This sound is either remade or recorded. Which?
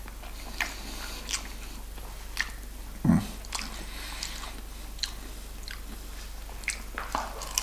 recorded